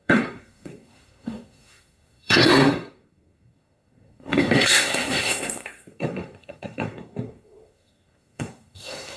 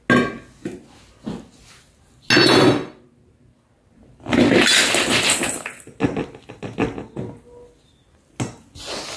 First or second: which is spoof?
first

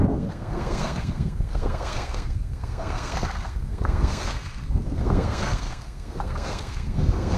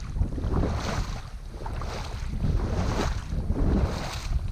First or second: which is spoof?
first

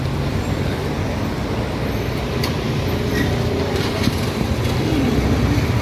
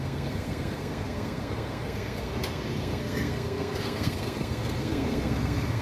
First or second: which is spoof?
second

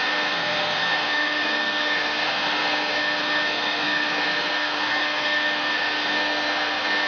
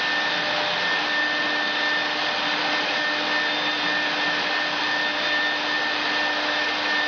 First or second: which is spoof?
first